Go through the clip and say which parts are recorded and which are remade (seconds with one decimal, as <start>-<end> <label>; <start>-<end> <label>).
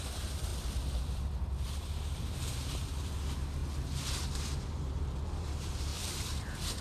0.0-0.5 remade; 0.5-1.0 recorded; 1.0-3.6 remade; 3.6-4.2 recorded; 4.2-6.8 remade